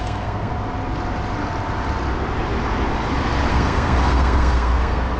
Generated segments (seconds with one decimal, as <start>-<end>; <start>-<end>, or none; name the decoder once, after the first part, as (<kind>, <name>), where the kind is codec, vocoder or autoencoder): 0.0-0.5 (codec, SNAC); 3.5-5.2